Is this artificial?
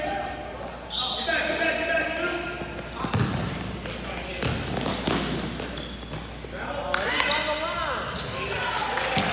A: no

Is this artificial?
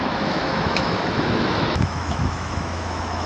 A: yes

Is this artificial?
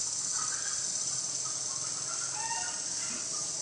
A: no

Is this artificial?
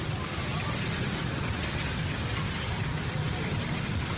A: no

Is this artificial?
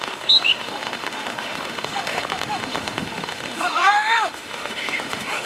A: yes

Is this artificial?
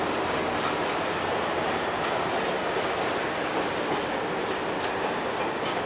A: no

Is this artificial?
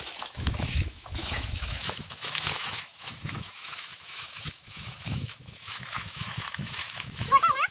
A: yes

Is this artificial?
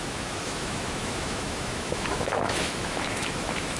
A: yes